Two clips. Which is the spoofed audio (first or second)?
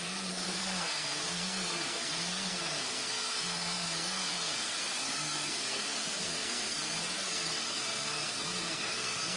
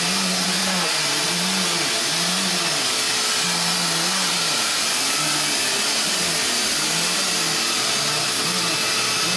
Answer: first